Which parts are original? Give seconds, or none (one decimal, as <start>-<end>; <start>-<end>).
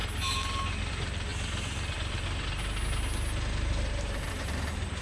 0.0-0.9; 1.3-4.3